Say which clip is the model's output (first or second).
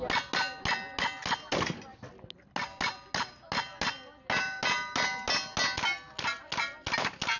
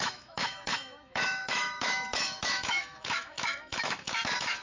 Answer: second